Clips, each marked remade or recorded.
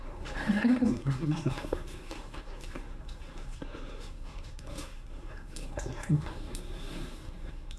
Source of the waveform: remade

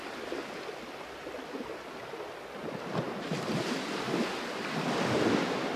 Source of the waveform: recorded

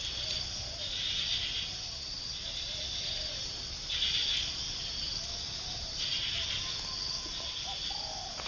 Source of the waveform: recorded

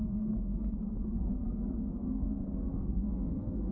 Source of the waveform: remade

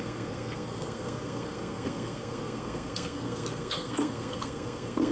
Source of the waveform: remade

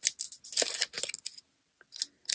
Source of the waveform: recorded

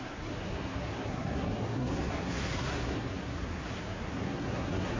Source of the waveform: remade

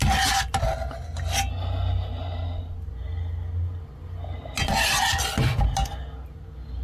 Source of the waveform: recorded